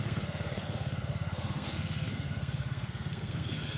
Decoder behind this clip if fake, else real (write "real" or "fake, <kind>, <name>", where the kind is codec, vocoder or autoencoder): fake, codec, SNAC